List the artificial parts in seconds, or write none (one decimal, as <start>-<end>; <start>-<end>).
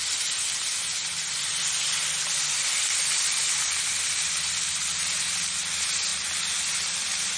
1.0-5.2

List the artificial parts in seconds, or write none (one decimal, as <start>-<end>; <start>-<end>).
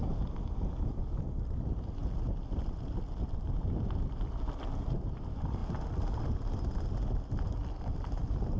0.0-1.0; 7.6-8.2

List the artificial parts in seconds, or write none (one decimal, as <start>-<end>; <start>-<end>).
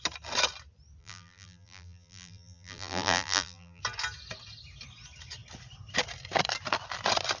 1.0-3.8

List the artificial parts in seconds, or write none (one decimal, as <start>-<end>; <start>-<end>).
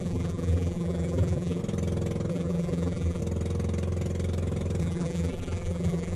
0.0-1.6; 2.3-3.2; 4.8-6.2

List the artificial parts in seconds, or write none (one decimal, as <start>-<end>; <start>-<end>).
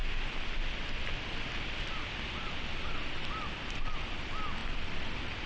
none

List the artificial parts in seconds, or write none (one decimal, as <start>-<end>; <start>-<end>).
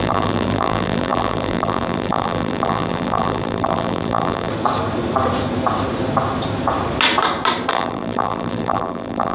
0.0-4.5; 7.7-9.3